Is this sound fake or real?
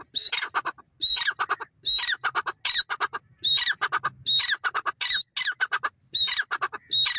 real